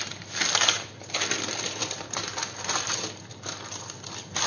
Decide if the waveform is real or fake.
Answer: real